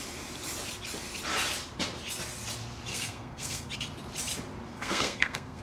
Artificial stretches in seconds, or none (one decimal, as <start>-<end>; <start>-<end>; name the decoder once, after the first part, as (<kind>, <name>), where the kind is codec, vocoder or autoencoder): 2.9-3.7 (codec, SNAC); 4.7-5.6